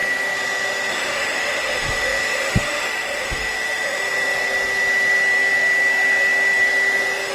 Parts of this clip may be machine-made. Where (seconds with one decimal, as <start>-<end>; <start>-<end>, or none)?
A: 0.9-4.0